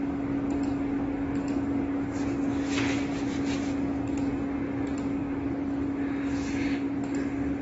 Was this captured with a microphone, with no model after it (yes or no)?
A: yes